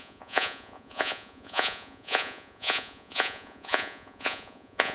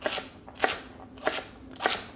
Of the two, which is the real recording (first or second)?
second